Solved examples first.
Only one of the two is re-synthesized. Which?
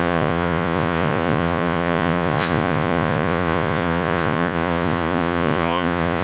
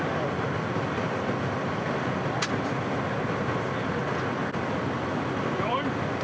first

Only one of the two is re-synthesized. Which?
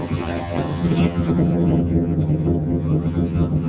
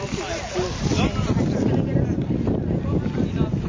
first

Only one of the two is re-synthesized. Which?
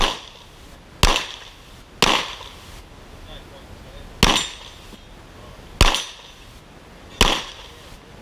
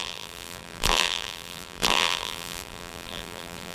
second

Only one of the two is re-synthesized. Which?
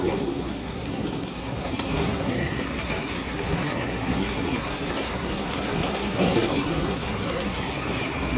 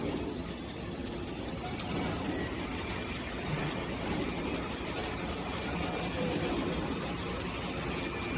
first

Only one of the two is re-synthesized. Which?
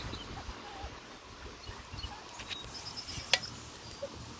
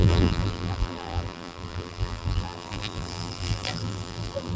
second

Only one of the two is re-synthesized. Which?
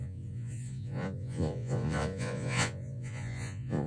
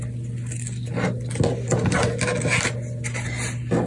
first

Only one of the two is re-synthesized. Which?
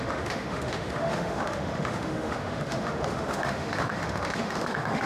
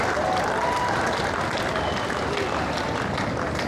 first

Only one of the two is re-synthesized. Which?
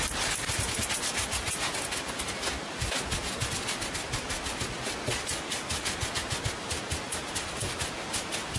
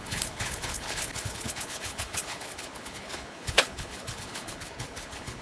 second